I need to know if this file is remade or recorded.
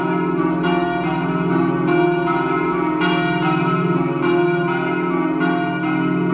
recorded